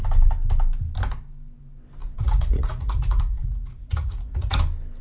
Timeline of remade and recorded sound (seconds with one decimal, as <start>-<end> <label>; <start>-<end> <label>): 0.0-2.0 recorded; 2.0-4.6 remade; 4.6-5.0 recorded